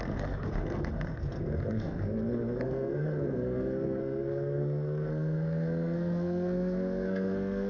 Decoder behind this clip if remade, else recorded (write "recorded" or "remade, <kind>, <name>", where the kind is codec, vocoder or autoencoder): remade, codec, SNAC